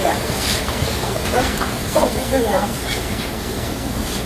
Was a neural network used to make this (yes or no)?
yes